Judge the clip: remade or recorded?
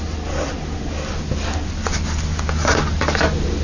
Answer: recorded